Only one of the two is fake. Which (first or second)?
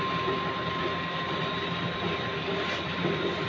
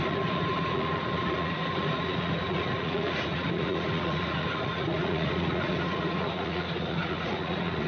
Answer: second